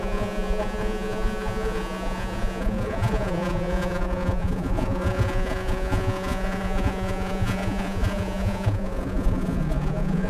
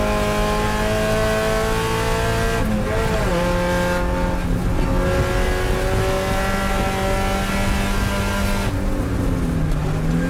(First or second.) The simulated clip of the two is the first